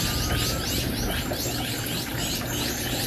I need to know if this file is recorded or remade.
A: remade